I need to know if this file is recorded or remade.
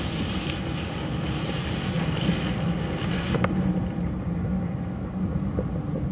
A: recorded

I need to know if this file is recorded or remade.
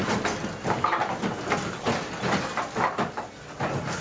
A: recorded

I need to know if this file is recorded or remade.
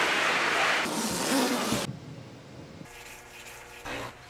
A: recorded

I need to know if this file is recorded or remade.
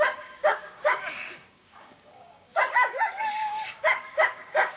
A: remade